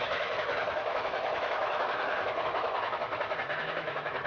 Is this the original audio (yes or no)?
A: no